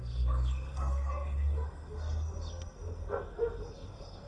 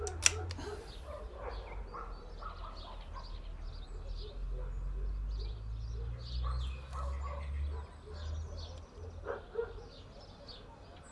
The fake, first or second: first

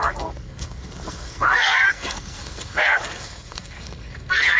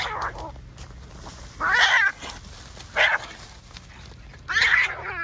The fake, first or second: first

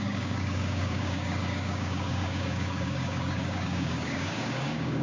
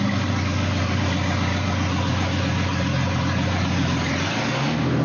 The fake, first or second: first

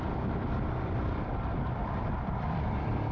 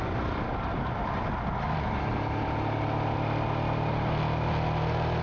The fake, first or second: first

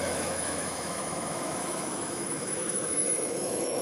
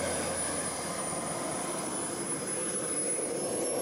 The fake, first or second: first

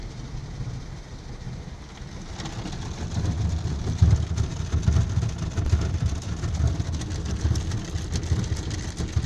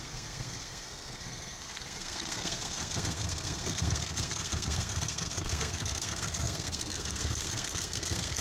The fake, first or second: second